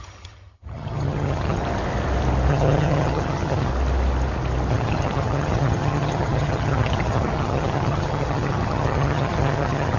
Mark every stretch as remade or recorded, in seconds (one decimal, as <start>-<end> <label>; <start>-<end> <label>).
0.0-1.6 remade; 1.6-2.5 recorded; 2.5-3.7 remade; 3.7-4.7 recorded; 4.7-10.0 remade